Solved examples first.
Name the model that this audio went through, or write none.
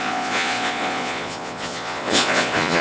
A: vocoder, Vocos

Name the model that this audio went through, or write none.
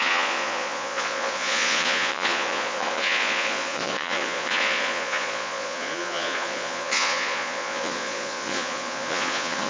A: vocoder, Vocos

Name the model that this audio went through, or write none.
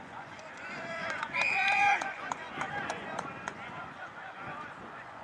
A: vocoder, Vocos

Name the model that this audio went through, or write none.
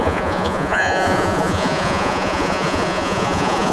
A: vocoder, Vocos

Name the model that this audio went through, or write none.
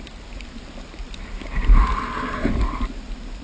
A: none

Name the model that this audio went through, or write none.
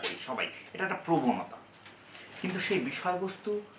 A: none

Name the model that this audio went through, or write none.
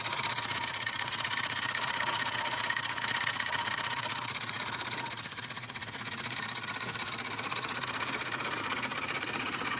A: vocoder, Vocos